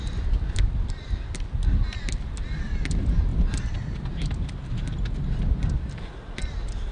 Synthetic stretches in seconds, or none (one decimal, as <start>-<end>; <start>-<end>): none